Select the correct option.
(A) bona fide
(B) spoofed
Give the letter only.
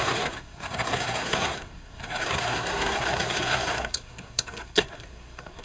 B